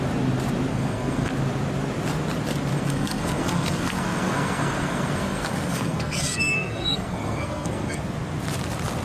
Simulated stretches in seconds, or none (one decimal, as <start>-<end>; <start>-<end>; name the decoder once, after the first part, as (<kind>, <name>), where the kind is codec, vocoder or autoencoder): 0.7-1.3 (codec, SNAC); 2.7-8.0